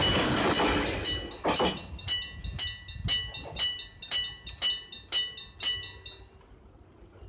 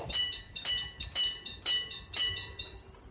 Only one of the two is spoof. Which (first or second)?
second